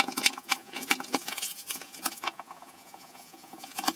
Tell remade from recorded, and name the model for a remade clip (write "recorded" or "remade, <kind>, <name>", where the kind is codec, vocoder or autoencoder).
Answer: remade, vocoder, Vocos